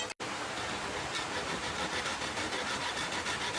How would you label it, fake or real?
real